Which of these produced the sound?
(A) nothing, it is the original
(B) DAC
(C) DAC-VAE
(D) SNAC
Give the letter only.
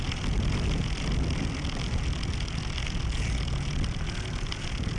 A